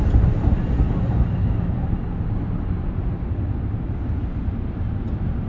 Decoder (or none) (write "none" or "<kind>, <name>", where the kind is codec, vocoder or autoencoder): none